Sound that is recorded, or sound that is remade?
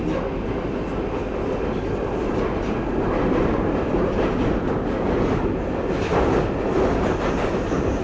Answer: recorded